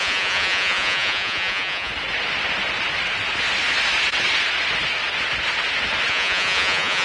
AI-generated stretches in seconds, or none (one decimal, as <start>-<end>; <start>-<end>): 0.0-1.9; 6.1-7.0